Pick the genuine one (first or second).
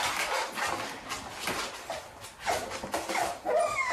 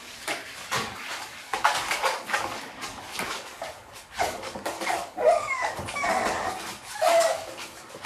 first